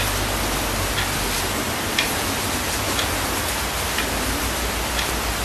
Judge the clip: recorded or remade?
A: recorded